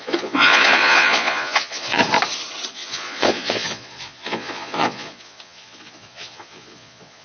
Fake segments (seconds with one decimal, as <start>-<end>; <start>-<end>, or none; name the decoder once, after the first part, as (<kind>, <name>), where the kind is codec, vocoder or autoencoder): 0.0-2.0 (vocoder, Vocos); 2.7-7.2